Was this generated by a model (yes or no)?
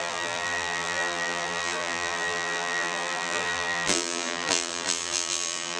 yes